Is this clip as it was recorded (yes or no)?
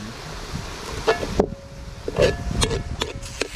yes